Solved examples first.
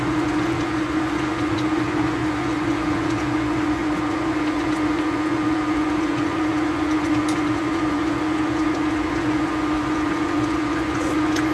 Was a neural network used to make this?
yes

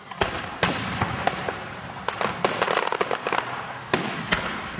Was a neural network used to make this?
no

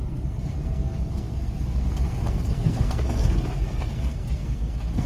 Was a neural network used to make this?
yes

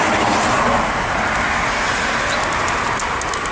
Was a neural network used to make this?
no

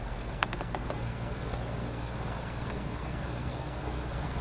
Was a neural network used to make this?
yes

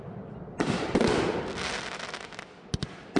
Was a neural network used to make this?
no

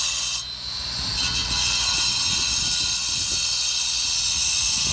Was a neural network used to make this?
no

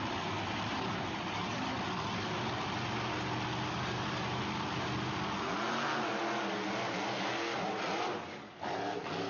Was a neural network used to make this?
no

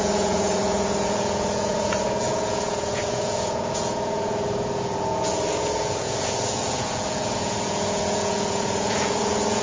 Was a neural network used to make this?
yes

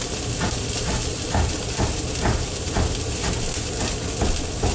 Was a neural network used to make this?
no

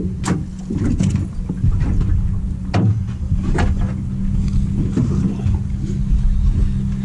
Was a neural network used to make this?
no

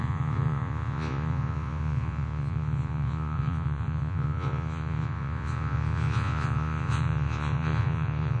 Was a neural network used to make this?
yes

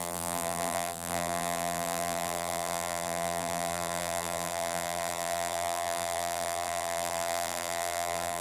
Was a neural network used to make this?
yes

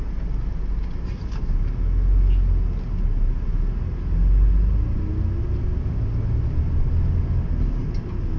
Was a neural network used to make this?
no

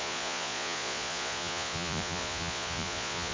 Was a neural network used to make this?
yes